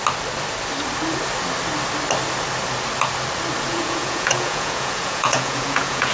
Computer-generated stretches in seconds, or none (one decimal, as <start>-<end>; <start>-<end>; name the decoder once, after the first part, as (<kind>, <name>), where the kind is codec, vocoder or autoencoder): 3.7-6.1 (vocoder, Vocos)